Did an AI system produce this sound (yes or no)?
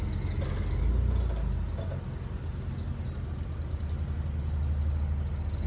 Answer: no